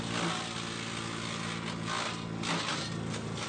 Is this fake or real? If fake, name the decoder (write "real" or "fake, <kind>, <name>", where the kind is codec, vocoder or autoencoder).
real